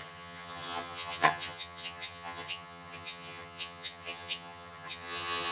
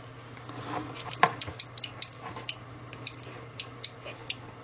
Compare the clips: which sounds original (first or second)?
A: second